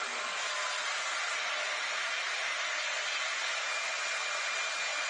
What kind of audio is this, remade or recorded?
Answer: recorded